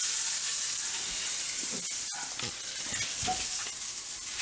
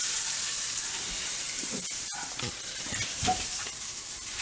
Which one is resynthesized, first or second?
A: second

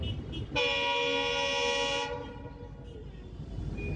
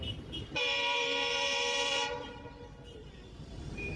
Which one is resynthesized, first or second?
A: second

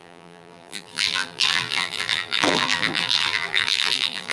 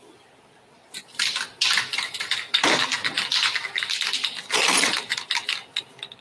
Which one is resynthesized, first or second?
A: first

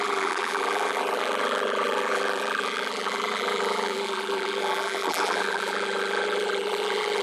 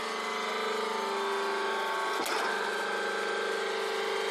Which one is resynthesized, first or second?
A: first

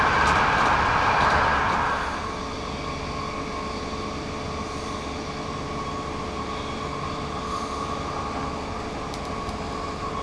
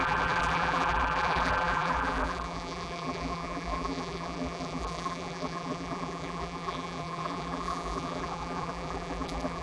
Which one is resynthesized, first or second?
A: second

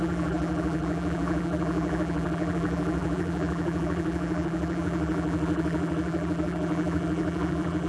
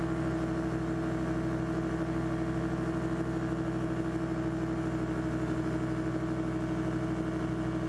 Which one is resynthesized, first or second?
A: first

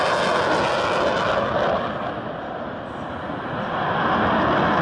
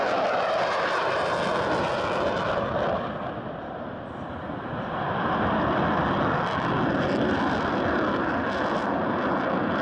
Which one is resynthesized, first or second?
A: second